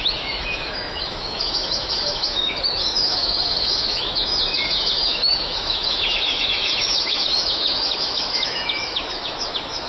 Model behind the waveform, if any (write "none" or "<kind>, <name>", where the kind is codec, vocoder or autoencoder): autoencoder, DAC-VAE